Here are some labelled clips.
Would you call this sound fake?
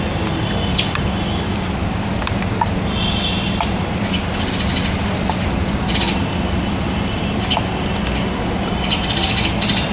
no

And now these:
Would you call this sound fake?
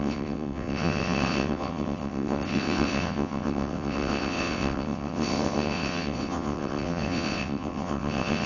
yes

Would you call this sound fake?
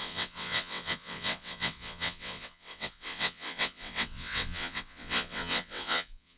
yes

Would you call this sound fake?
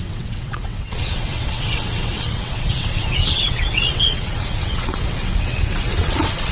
yes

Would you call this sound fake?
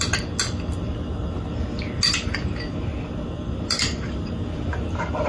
no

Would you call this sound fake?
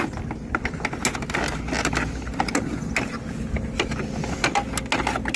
no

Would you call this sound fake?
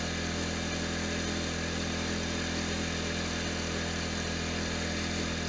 no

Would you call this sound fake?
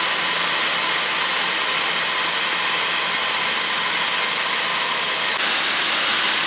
no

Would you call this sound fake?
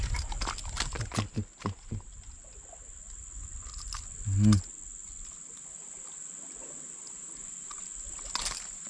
no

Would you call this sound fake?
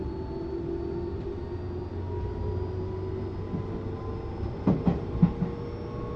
no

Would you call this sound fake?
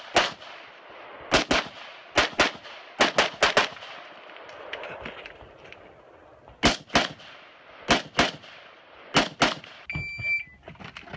no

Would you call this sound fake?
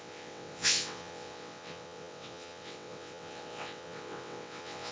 yes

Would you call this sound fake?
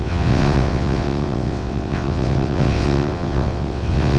yes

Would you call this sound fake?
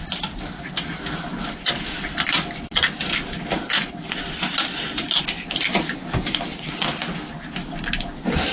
no